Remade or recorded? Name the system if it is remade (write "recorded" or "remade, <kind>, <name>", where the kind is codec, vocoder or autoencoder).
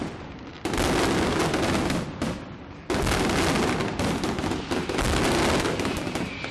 recorded